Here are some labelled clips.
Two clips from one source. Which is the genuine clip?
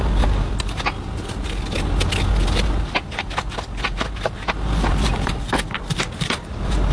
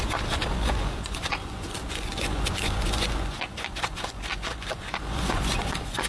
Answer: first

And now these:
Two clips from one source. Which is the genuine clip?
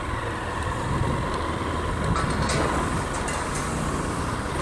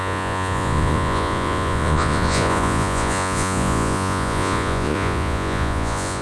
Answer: first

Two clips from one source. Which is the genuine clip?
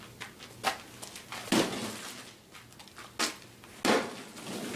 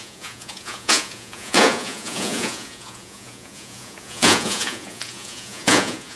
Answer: first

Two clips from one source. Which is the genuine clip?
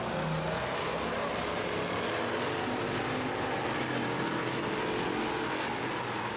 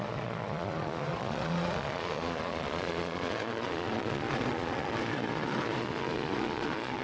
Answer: first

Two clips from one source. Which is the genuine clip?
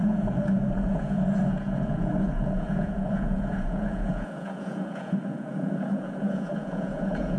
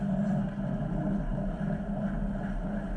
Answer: second